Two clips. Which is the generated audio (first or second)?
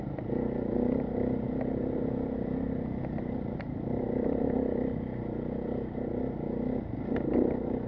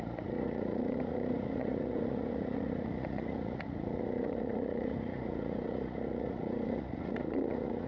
second